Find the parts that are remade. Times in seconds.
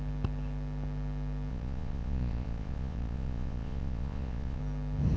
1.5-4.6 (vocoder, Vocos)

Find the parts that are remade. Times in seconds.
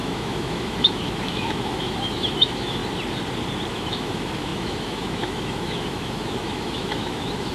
0.0-2.8 (autoencoder, DAC-VAE); 3.7-7.5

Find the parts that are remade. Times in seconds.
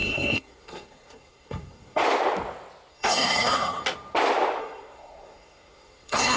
0.0-2.0 (codec, SNAC); 2.9-3.8; 4.6-6.4